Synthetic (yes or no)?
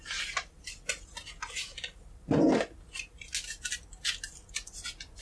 no